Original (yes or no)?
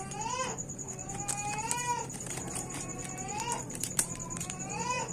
no